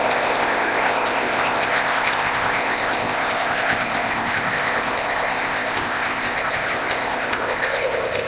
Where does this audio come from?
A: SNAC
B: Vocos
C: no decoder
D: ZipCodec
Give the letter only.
D